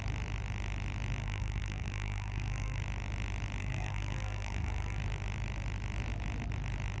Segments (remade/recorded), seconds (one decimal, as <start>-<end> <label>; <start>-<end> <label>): 0.0-1.2 recorded; 1.2-2.8 remade; 2.8-3.6 recorded; 3.6-5.0 remade; 5.0-7.0 recorded